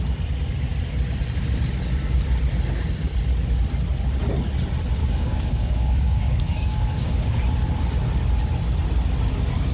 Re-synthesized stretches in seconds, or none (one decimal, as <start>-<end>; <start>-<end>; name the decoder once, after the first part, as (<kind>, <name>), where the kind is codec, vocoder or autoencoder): 5.0-7.4 (codec, DAC)

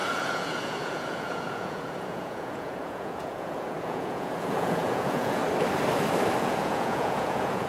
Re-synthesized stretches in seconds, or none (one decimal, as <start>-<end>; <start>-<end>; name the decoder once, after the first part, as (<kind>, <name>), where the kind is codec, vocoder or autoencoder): 0.0-5.4 (vocoder, Vocos); 6.4-7.7

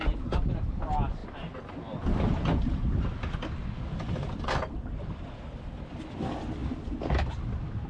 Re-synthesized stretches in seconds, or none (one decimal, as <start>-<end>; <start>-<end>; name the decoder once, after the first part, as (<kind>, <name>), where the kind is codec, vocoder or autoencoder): none

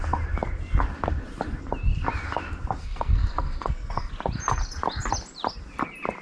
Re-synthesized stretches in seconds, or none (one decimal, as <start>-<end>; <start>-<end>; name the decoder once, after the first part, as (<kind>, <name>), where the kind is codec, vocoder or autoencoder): 2.8-4.1 (codec, SNAC)

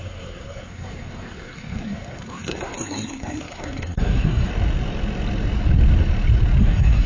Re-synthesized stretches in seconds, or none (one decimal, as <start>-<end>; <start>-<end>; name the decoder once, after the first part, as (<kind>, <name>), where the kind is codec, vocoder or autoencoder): 0.0-4.5 (codec, SNAC); 6.6-7.1